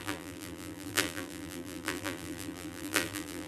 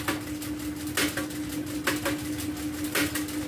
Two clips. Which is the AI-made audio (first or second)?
first